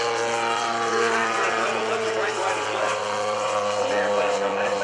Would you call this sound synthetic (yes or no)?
yes